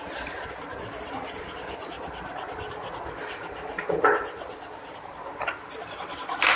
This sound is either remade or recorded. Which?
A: recorded